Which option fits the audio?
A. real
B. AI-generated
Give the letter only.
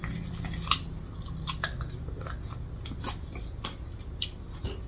A